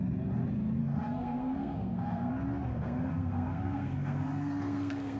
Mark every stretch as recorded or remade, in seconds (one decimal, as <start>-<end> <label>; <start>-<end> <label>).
0.0-0.8 recorded; 0.8-2.3 remade; 2.3-2.7 recorded; 2.7-5.2 remade